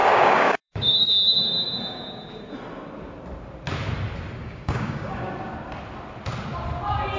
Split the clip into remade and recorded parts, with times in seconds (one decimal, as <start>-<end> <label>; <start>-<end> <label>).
0.0-1.1 remade; 1.1-4.4 recorded; 4.4-5.3 remade; 5.3-7.2 recorded